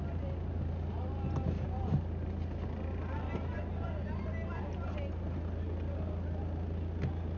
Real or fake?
real